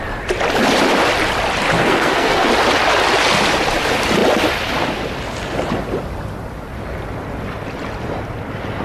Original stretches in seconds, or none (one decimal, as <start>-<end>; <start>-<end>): 0.0-1.8; 2.5-8.8